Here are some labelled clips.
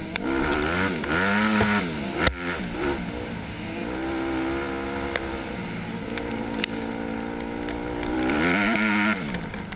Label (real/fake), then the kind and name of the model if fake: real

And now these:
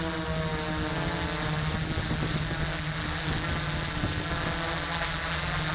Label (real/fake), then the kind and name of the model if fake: real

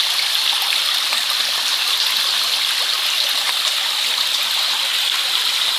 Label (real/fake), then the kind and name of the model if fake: real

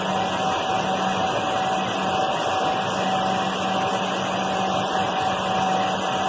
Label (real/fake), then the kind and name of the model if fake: real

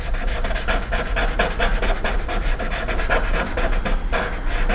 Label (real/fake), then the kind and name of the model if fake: real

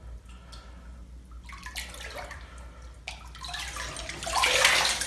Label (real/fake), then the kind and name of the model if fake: real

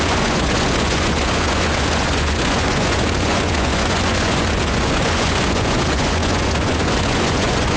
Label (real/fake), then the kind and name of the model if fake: fake, vocoder, Vocos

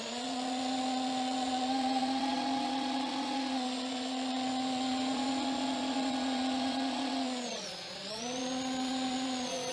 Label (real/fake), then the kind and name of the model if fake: fake, vocoder, Vocos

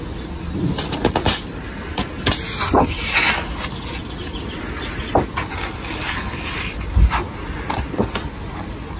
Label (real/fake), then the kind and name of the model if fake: real